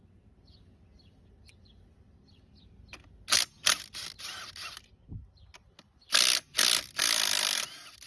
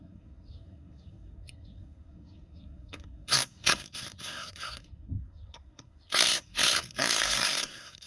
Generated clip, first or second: second